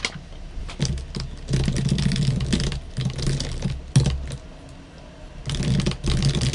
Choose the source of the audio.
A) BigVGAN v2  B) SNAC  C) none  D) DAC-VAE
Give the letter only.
C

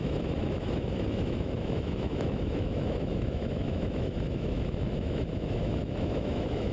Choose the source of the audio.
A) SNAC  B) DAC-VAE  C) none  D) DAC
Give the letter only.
B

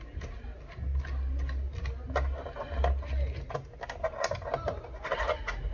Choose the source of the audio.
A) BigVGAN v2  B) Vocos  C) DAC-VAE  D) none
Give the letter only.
D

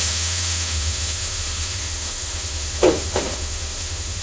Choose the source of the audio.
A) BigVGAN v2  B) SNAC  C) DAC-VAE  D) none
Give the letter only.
C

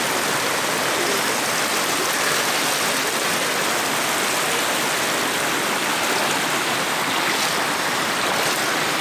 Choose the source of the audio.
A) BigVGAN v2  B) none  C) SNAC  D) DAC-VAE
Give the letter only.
B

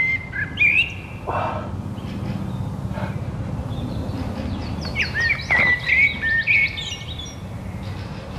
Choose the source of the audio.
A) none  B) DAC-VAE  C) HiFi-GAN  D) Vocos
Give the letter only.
A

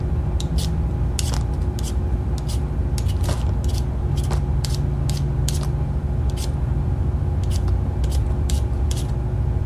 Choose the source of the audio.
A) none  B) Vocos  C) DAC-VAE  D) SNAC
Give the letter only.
A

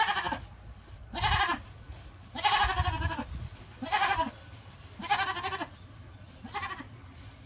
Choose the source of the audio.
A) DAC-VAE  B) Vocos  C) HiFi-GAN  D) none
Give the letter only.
D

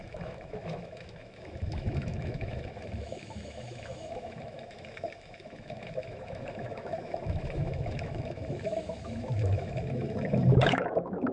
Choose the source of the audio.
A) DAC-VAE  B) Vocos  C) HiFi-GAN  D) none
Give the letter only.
A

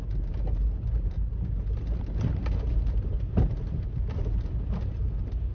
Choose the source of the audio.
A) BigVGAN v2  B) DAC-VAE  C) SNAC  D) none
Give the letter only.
D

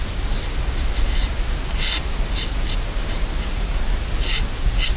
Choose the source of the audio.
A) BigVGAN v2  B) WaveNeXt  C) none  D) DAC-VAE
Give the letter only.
C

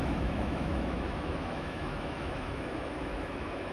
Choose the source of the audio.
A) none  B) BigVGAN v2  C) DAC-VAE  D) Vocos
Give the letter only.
C